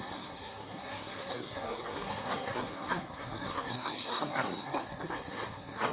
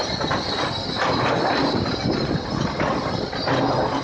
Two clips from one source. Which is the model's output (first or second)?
first